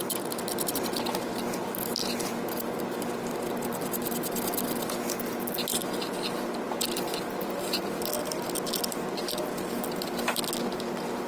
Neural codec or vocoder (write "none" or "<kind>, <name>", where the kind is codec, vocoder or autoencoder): none